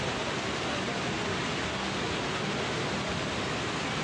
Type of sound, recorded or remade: recorded